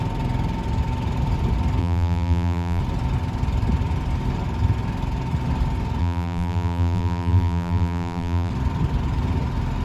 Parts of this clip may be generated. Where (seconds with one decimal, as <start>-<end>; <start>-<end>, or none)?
1.8-2.8; 6.0-8.5

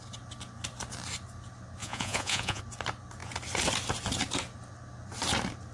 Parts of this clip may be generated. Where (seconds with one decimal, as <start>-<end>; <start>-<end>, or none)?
1.8-2.6

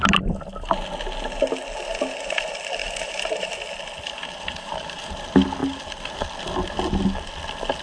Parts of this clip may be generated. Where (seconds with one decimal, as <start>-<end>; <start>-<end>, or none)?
2.8-3.5; 4.2-5.1

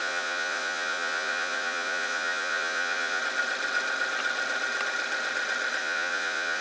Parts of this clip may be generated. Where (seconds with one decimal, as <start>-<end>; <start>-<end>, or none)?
0.0-3.2; 5.8-6.6